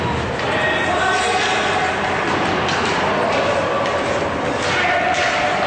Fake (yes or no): no